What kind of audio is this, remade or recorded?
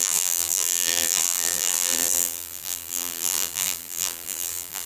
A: remade